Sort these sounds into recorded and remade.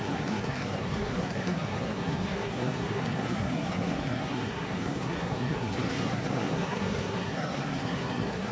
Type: remade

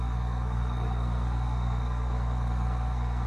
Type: remade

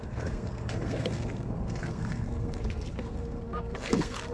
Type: remade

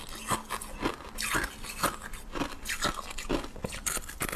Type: recorded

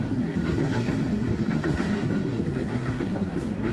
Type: remade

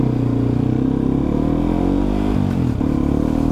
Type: recorded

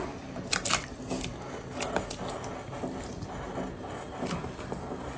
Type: recorded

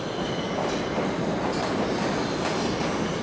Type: recorded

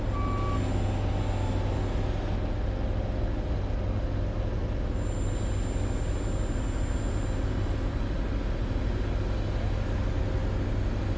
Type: recorded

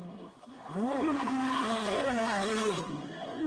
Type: remade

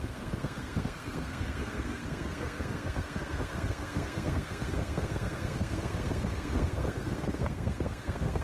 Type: remade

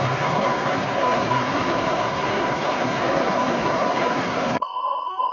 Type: remade